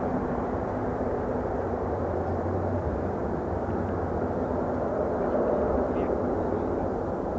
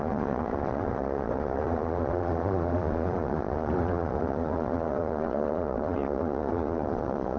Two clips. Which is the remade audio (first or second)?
second